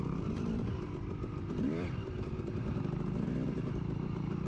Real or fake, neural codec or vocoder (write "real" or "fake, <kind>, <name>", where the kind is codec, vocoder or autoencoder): fake, vocoder, BigVGAN v2